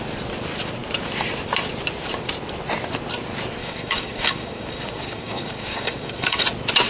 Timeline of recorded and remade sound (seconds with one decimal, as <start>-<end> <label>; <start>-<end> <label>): 0.0-3.6 recorded; 3.6-6.5 remade; 6.5-6.9 recorded